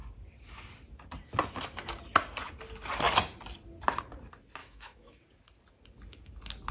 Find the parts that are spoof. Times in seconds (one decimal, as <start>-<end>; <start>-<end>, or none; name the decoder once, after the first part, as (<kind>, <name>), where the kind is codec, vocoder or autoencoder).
4.6-5.2 (autoencoder, DAC-VAE)